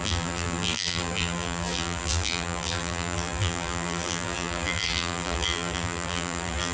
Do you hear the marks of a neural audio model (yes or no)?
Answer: yes